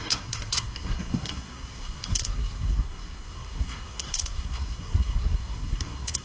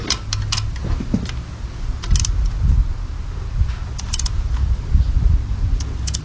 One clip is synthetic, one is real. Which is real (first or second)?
second